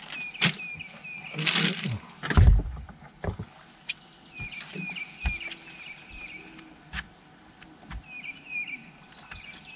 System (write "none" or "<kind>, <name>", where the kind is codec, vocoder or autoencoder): none